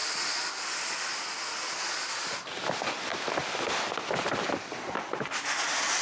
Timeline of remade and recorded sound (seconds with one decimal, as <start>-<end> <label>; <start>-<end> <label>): 0.0-6.0 recorded